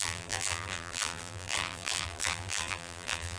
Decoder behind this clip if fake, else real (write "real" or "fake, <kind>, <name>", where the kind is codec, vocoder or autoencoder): fake, vocoder, BigVGAN v2